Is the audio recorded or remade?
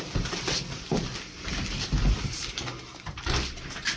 recorded